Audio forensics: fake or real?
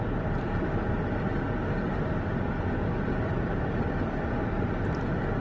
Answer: real